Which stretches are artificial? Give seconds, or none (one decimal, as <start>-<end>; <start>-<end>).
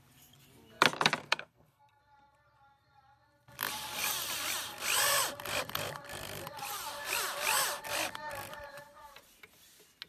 1.2-2.0